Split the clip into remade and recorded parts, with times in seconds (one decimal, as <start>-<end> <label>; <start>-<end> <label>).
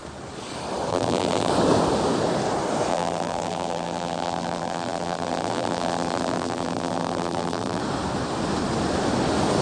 0.0-0.9 recorded; 0.9-1.5 remade; 1.5-2.9 recorded; 2.9-7.8 remade; 7.8-9.6 recorded